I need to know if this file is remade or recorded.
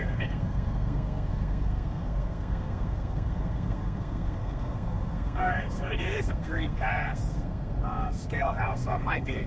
remade